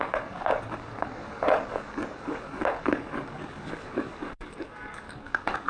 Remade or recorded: remade